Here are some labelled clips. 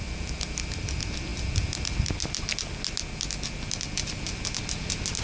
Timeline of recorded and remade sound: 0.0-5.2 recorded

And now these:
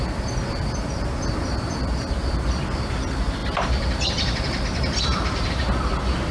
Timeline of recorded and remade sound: 0.0-6.3 remade

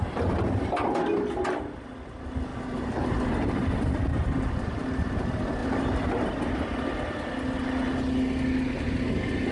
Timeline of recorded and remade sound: 0.0-2.5 recorded; 2.5-3.5 remade; 3.5-5.6 recorded; 5.6-6.1 remade; 6.1-9.5 recorded

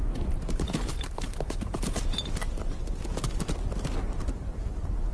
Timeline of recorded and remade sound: 0.0-2.9 remade; 2.9-5.1 recorded

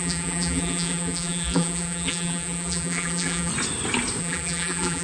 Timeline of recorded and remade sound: 0.0-3.5 remade; 3.5-4.2 recorded; 4.2-5.0 remade

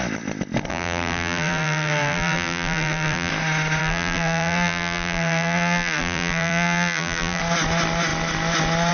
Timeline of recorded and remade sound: 0.0-0.7 recorded; 0.7-3.3 remade; 3.3-3.8 recorded; 3.8-7.4 remade; 7.4-8.9 recorded

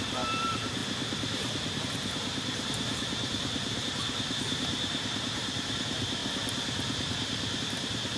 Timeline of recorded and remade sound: 0.0-0.8 remade; 0.8-1.8 recorded; 1.8-6.2 remade; 6.2-7.6 recorded; 7.6-8.2 remade

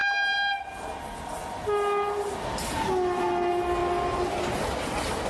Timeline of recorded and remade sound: 0.0-5.3 recorded